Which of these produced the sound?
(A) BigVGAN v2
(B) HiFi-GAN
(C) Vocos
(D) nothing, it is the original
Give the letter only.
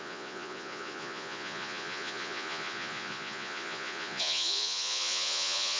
C